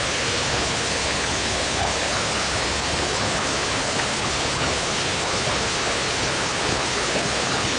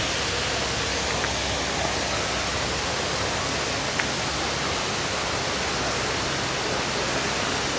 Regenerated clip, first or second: first